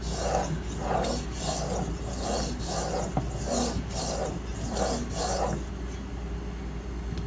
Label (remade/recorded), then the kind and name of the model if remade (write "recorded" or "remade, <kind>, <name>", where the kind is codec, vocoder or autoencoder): recorded